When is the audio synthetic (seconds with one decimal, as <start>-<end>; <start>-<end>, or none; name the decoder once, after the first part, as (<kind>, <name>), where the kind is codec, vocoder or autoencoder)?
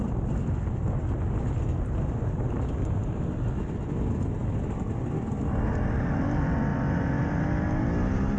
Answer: none